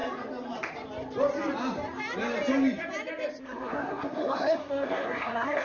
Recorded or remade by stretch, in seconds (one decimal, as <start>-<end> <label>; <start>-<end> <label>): 0.0-3.4 recorded; 3.4-5.6 remade